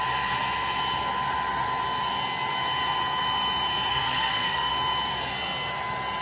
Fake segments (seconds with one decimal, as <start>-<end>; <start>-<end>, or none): 3.9-4.7